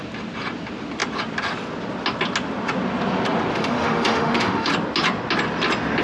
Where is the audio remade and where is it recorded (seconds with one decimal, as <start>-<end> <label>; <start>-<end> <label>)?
0.0-3.5 recorded; 3.5-4.7 remade; 4.7-6.0 recorded

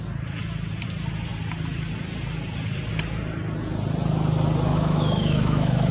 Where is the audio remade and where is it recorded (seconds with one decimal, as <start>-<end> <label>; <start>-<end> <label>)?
0.0-4.7 recorded; 4.7-5.9 remade

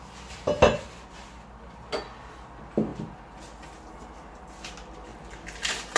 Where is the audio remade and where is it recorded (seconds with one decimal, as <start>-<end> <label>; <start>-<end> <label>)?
0.0-2.9 recorded; 2.9-3.9 remade; 3.9-5.1 recorded; 5.1-6.0 remade